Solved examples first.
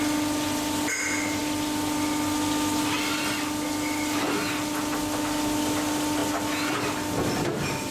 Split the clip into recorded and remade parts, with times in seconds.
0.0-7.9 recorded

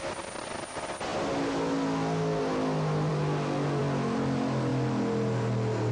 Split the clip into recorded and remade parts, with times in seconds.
0.0-5.9 recorded

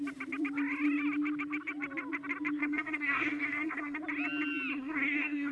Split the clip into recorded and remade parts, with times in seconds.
0.0-2.6 recorded; 2.6-4.0 remade; 4.0-4.7 recorded; 4.7-5.5 remade

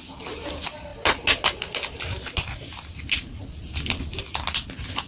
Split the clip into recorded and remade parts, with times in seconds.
0.0-5.1 recorded

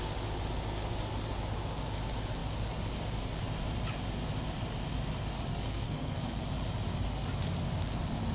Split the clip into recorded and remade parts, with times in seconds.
0.0-5.5 recorded; 5.5-6.4 remade; 6.4-8.3 recorded

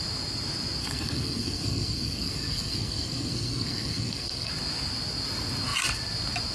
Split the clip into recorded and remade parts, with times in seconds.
0.0-0.8 recorded; 0.8-4.5 remade; 4.5-6.5 recorded